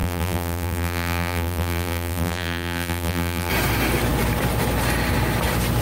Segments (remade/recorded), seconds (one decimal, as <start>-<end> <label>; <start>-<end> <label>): 0.0-3.5 remade; 3.5-5.8 recorded